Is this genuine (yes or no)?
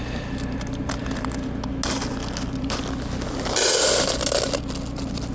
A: yes